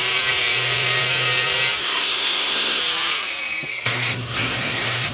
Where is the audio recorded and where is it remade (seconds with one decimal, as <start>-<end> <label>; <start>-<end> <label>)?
0.0-1.8 recorded; 1.8-2.8 remade; 2.8-3.7 recorded; 3.7-5.1 remade